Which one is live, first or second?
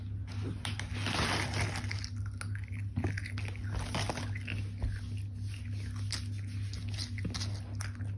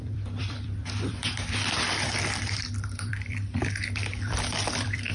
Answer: first